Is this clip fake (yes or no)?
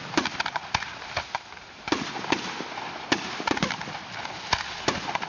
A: no